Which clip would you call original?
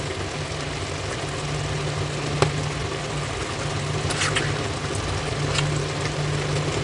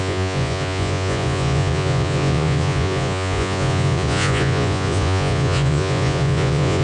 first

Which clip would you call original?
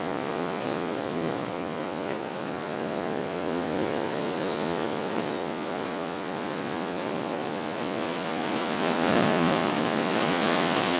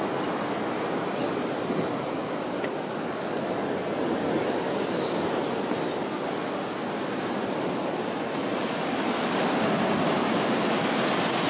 second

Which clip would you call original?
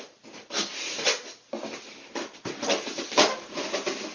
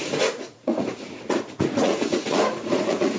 first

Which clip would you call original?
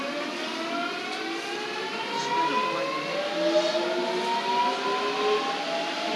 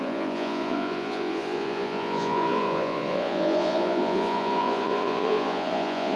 first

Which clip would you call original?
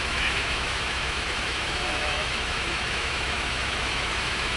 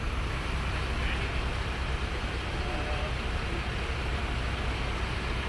second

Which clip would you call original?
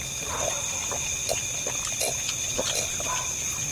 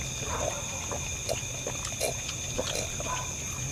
second